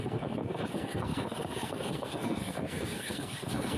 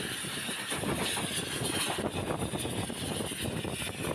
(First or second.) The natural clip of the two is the second